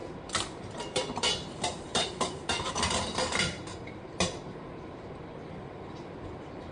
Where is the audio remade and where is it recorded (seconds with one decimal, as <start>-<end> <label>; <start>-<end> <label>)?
0.0-4.0 remade; 4.0-6.7 recorded